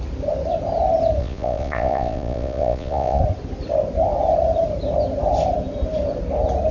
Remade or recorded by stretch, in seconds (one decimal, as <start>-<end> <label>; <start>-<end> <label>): 0.0-1.2 recorded; 1.2-3.2 remade; 3.2-6.7 recorded